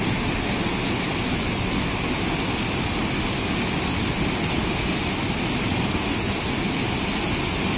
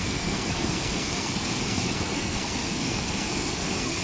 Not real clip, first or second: second